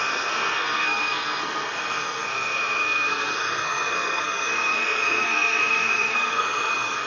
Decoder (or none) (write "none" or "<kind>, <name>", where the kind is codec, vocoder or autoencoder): codec, SNAC